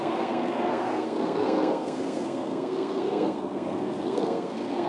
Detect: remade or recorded remade